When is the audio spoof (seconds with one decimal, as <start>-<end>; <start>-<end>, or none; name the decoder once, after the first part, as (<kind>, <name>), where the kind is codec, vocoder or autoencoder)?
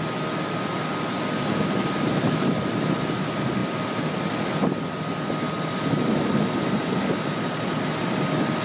none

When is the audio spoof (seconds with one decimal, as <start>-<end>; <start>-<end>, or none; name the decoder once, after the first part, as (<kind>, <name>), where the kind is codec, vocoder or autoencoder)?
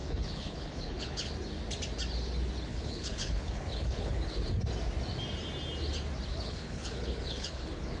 0.0-1.3 (codec, HILCodec); 2.7-4.4; 6.3-8.0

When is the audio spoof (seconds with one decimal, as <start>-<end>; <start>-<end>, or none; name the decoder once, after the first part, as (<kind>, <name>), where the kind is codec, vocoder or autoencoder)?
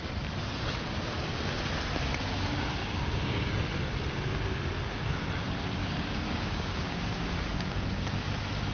2.8-3.5 (codec, DAC); 5.8-7.8